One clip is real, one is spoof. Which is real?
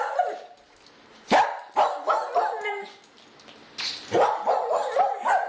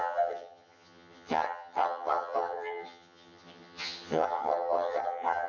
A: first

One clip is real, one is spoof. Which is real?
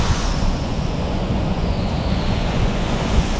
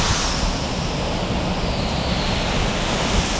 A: second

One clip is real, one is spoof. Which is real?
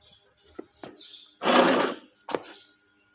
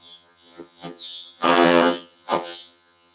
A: first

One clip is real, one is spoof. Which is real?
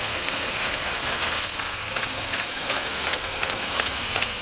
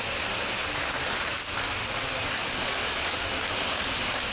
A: second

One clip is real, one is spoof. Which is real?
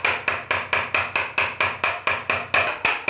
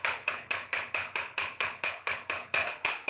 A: first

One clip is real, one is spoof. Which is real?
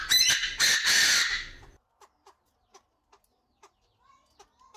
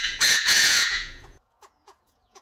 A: first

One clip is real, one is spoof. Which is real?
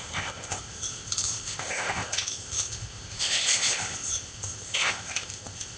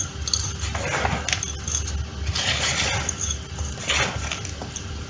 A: second